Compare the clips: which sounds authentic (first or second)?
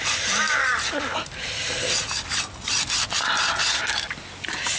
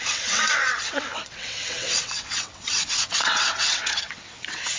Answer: first